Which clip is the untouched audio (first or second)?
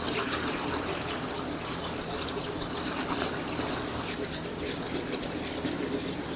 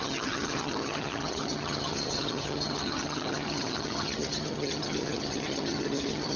first